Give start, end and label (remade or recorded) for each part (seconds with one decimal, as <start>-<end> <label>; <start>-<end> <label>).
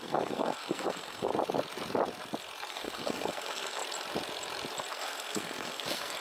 0.0-1.3 remade; 1.3-2.7 recorded; 2.7-3.8 remade; 3.8-4.9 recorded; 4.9-6.2 remade